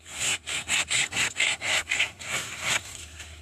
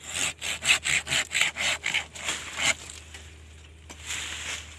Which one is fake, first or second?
first